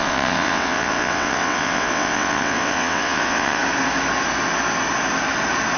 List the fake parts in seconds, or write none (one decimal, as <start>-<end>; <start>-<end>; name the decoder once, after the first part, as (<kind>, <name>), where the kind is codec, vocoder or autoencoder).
0.0-3.6 (vocoder, WaveNeXt)